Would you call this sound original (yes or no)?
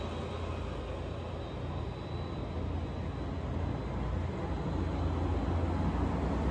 yes